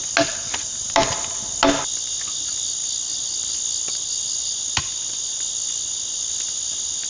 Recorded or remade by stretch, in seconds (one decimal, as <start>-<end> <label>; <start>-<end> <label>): 0.0-7.1 recorded